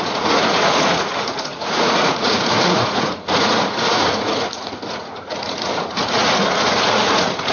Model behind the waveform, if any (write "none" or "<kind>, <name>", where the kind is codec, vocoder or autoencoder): vocoder, Vocos